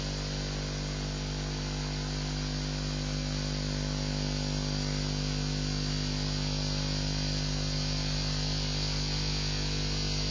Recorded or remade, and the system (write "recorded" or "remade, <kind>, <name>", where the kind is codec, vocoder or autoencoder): recorded